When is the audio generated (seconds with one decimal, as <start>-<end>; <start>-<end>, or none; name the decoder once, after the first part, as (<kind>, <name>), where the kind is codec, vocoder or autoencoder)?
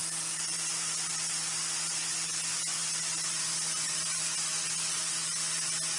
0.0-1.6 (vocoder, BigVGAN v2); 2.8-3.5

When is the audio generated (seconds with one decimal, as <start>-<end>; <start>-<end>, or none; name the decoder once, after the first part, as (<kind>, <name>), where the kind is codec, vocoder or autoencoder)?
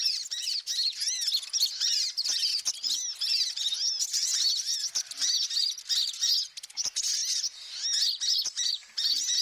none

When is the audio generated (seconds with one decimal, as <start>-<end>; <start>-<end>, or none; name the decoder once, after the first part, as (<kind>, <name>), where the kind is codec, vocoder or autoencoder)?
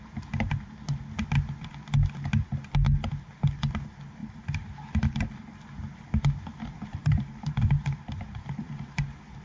4.2-5.6 (vocoder, BigVGAN v2); 7.0-9.0